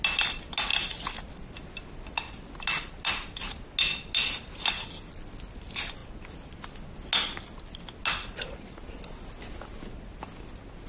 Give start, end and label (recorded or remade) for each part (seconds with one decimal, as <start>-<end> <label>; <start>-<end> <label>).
0.0-10.9 recorded